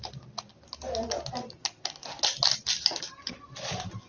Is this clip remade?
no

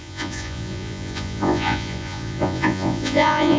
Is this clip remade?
yes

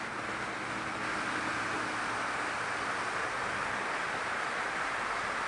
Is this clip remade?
no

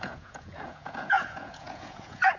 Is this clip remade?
yes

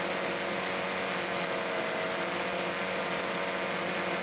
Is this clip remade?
no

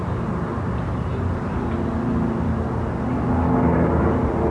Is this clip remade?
no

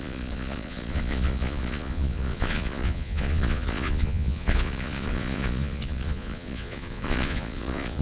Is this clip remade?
yes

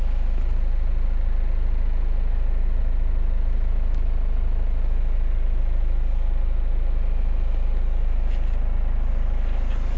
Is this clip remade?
no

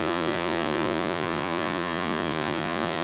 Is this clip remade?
yes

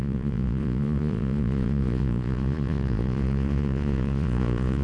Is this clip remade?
yes